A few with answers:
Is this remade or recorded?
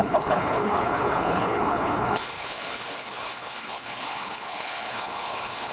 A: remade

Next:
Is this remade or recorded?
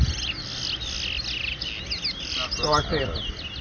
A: recorded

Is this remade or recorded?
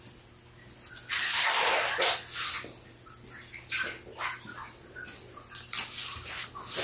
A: recorded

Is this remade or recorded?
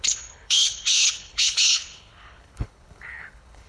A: remade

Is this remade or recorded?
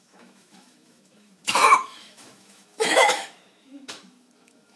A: remade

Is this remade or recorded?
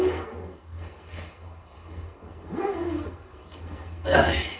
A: remade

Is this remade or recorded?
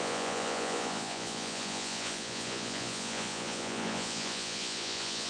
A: remade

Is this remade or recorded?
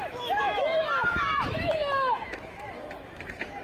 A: remade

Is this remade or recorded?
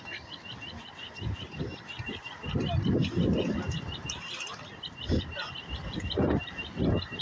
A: recorded